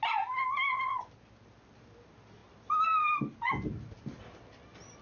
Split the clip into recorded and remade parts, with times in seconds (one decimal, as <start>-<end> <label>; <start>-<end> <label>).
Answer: 0.0-5.0 recorded